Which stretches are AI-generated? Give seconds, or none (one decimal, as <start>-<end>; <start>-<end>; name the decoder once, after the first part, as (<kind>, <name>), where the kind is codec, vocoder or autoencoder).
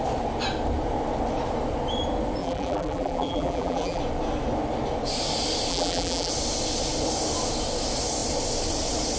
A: 2.4-4.0 (vocoder, BigVGAN v2); 5.7-6.3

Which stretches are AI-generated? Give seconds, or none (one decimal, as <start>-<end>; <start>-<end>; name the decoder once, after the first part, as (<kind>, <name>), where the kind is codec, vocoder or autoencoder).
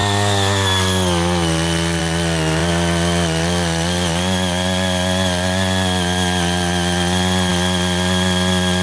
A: none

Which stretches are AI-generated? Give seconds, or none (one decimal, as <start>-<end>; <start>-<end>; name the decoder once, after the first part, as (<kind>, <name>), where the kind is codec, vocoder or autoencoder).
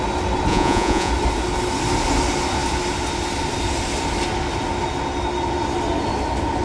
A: 0.5-1.1 (vocoder, Vocos)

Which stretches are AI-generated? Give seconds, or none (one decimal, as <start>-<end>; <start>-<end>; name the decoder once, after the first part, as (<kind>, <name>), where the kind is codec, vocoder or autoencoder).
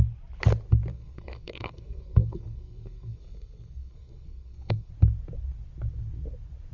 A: 0.9-4.9 (codec, SNAC)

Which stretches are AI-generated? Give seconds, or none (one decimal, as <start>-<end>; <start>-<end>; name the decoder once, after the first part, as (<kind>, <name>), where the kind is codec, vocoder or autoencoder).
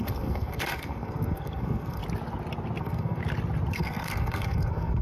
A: 0.0-2.0 (codec, SNAC); 2.8-3.2; 3.7-5.0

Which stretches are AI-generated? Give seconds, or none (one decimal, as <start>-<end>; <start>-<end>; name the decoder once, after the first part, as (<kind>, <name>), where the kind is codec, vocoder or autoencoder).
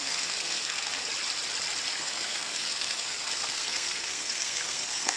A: 0.0-1.0 (codec, SNAC); 2.0-5.2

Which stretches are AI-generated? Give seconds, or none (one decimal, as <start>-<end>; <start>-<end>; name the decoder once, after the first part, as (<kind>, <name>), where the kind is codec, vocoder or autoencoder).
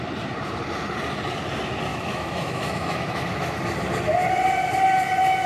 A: 1.9-3.6 (autoencoder, DAC-VAE)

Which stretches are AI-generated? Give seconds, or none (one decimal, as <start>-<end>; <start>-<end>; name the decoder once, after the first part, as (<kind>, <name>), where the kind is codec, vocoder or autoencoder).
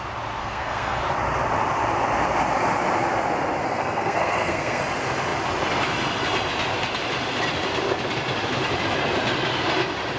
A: 0.4-1.0 (codec, SNAC); 3.6-4.8